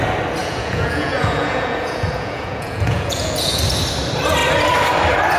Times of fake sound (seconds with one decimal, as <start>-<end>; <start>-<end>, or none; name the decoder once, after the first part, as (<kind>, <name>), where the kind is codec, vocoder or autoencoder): 0.4-3.6 (vocoder, Vocos)